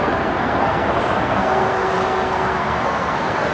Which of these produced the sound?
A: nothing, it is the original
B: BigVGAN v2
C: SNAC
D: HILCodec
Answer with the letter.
C